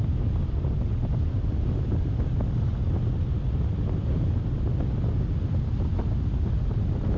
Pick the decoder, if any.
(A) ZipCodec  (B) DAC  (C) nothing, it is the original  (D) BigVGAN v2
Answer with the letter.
C